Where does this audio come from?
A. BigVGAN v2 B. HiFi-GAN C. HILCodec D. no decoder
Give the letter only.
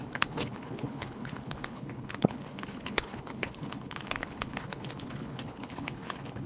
C